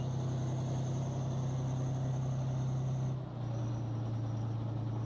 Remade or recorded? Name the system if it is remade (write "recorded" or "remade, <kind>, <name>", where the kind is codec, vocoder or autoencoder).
recorded